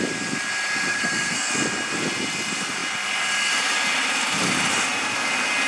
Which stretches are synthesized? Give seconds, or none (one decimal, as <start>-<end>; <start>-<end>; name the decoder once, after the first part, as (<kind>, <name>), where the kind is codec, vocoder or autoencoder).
0.9-1.5 (codec, SNAC)